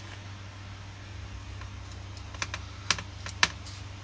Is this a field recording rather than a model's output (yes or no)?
yes